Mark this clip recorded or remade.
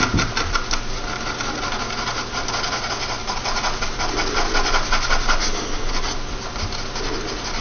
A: recorded